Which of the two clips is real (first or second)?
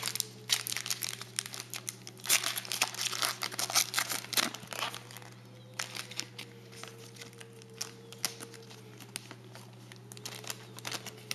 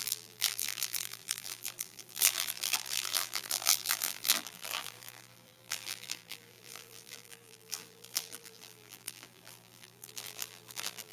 first